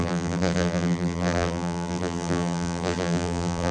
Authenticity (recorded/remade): remade